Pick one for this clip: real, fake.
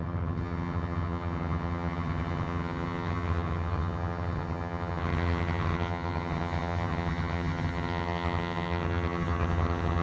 fake